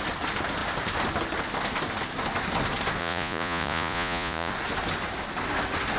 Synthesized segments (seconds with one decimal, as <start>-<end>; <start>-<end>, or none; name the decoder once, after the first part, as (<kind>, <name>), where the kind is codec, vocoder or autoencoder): 3.0-4.5 (vocoder, Vocos)

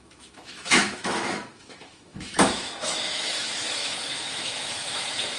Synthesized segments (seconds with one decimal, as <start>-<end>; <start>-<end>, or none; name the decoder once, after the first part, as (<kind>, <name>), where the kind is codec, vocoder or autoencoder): 0.0-5.4 (autoencoder, DAC-VAE)